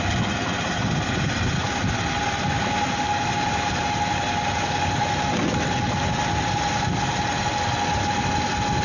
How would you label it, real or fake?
real